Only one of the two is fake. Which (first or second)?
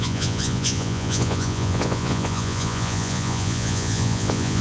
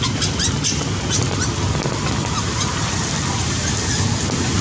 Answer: first